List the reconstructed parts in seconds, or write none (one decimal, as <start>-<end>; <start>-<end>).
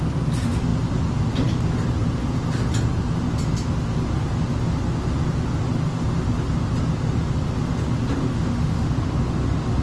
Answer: 8.3-8.9